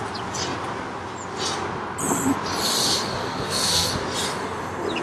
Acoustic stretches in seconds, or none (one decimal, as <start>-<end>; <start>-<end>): 0.0-3.2; 3.9-5.0